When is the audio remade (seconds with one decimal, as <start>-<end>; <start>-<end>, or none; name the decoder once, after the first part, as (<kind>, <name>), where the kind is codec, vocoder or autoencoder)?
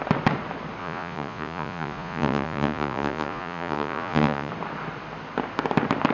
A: 0.8-4.5 (vocoder, Vocos)